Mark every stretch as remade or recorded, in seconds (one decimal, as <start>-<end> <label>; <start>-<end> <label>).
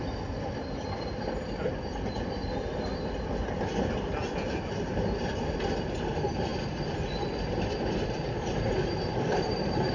0.0-9.9 recorded